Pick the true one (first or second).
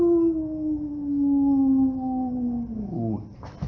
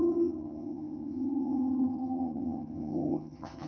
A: first